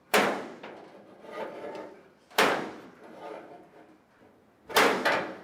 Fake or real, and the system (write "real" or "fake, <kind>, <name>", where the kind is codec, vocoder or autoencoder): fake, vocoder, BigVGAN v2